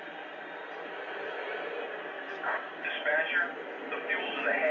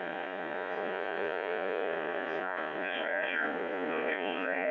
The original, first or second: first